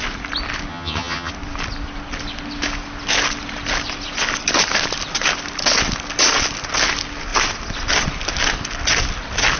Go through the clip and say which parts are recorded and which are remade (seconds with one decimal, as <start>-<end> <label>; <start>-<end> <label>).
0.0-0.7 recorded; 0.7-1.3 remade; 1.3-9.6 recorded